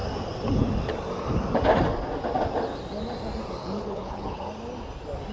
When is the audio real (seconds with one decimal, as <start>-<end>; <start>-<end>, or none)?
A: 0.0-3.6; 4.4-5.3